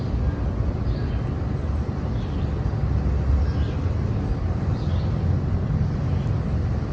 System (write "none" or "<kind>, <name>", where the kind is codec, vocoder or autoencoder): none